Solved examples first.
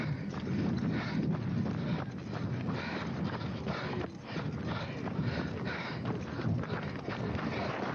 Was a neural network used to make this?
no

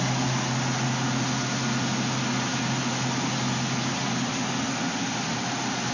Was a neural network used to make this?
no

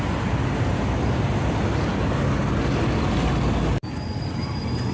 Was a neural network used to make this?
no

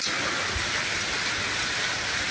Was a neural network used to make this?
no